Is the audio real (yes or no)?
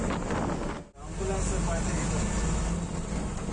yes